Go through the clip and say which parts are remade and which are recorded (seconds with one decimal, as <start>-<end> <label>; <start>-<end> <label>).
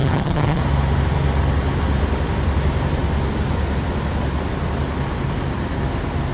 0.0-0.6 remade; 0.6-6.3 recorded